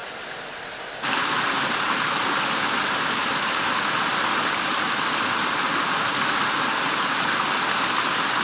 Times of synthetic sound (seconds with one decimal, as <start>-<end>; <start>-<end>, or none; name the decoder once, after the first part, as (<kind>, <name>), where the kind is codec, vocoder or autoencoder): none